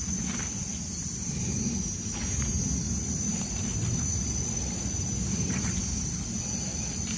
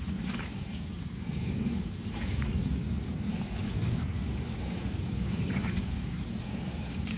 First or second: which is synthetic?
second